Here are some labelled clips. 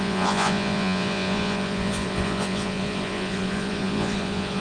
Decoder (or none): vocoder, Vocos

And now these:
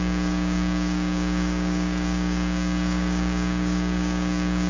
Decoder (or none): codec, DAC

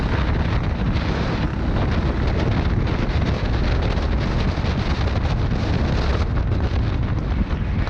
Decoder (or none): none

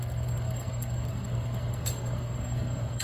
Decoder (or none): codec, SNAC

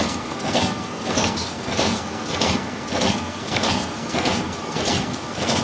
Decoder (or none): codec, SNAC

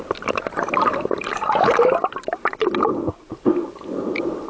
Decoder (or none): none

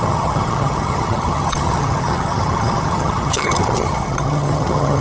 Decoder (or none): vocoder, HiFi-GAN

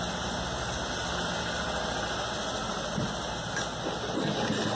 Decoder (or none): none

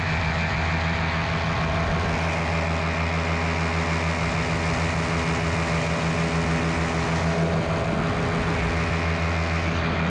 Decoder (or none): none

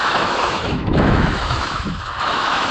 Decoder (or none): autoencoder, DAC-VAE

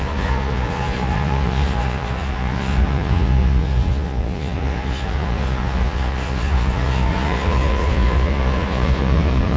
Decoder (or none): vocoder, Vocos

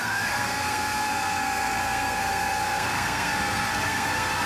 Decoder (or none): codec, SNAC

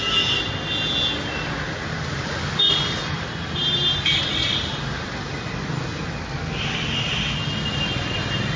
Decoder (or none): none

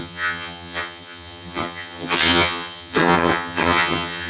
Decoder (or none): vocoder, HiFi-GAN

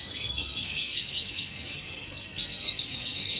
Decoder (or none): codec, SNAC